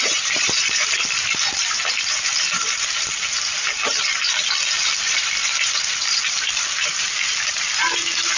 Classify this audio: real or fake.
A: fake